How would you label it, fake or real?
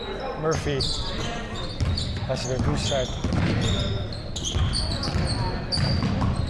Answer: real